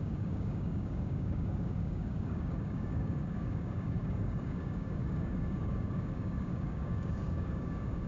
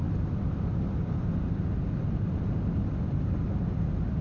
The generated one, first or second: first